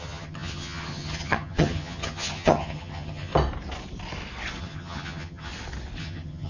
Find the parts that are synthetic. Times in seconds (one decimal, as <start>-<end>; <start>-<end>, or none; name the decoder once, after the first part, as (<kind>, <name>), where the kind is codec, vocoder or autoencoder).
0.0-3.3 (vocoder, HiFi-GAN); 4.6-5.5; 6.0-6.5